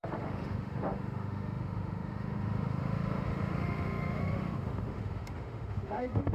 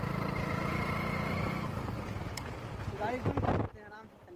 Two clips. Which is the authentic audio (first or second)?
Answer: second